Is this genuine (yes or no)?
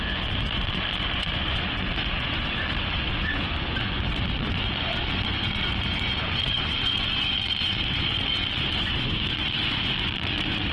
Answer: no